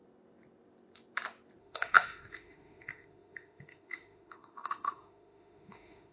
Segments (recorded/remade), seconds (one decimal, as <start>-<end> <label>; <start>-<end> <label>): 0.0-1.6 recorded; 1.6-6.1 remade